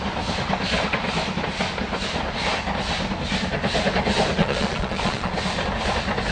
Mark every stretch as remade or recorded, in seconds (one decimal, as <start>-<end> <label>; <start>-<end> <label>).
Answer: 0.0-4.4 recorded; 4.4-5.3 remade; 5.3-6.3 recorded